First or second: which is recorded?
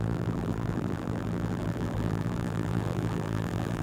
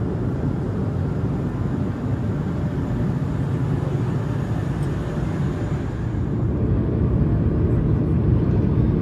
second